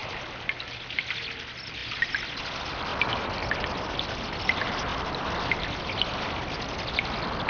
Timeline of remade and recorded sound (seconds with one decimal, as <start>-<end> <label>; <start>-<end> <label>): 0.0-7.5 recorded